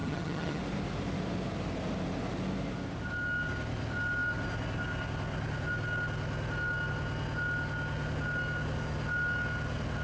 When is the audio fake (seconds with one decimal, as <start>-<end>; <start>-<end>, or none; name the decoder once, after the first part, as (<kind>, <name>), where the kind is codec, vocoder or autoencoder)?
0.0-0.6 (vocoder, HiFi-GAN)